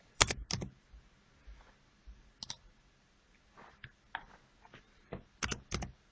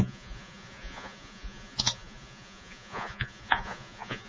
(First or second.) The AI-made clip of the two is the second